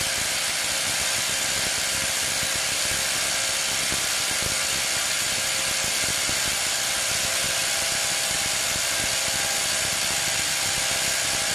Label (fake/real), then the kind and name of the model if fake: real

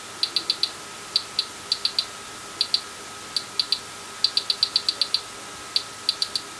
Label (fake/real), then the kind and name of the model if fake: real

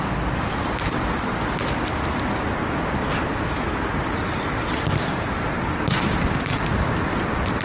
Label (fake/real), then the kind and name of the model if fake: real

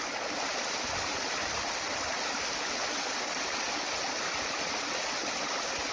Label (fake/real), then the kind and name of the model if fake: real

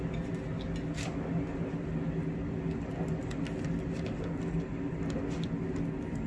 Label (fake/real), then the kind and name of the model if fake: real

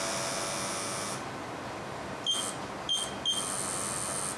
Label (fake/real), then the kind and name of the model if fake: real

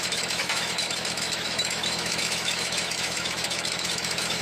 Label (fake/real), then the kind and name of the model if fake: fake, autoencoder, DAC-VAE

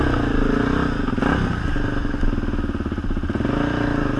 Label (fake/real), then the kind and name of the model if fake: real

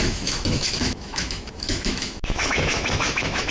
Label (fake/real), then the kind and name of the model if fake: fake, autoencoder, DAC-VAE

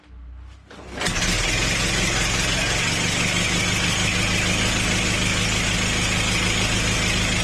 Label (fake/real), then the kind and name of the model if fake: real